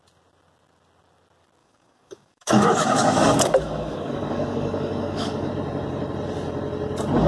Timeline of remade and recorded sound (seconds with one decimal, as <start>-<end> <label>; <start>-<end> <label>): 0.0-1.6 recorded; 1.6-5.5 remade; 5.5-7.3 recorded